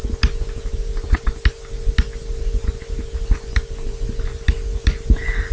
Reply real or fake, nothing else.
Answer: real